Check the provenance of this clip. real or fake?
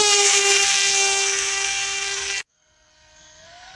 fake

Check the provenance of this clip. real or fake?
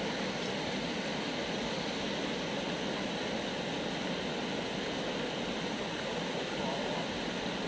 real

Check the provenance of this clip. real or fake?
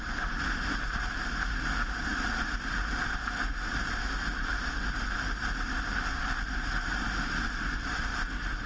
real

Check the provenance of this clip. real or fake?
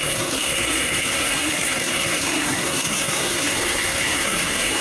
fake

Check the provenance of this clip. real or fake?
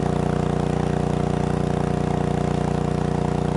real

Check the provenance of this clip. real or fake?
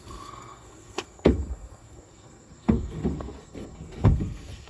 fake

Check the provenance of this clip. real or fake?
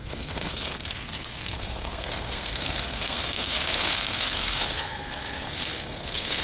fake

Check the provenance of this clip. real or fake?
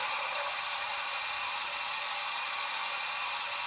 real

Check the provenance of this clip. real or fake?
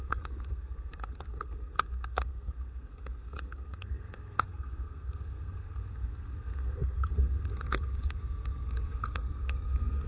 fake